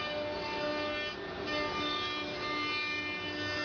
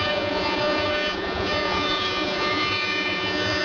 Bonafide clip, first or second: first